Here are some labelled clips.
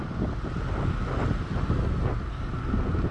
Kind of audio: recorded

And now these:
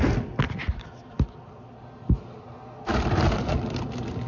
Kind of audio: recorded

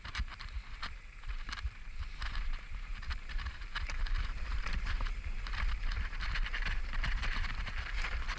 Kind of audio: remade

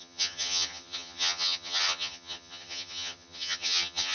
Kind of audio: remade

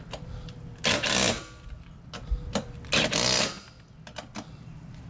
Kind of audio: recorded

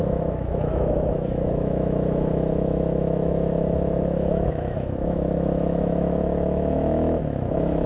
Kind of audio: remade